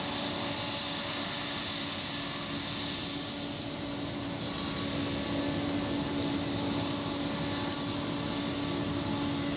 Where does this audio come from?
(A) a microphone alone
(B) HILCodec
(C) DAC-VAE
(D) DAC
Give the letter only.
A